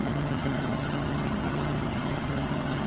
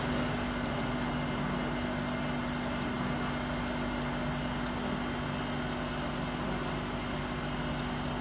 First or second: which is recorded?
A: second